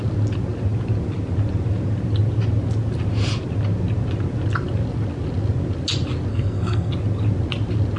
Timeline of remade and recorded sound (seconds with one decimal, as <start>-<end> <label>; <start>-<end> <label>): 0.0-6.3 recorded; 6.3-6.9 remade; 6.9-8.0 recorded